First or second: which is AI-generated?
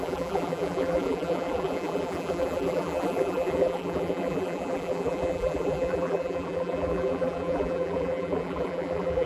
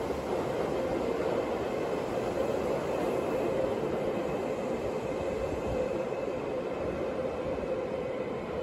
first